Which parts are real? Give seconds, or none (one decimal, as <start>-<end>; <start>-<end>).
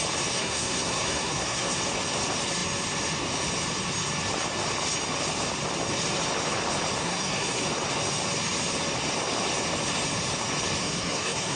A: 0.0-0.4; 1.8-7.0; 7.6-10.8